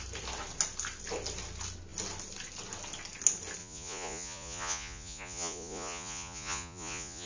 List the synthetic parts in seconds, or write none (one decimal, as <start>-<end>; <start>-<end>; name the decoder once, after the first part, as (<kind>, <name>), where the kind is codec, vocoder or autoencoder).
3.6-7.3 (vocoder, Vocos)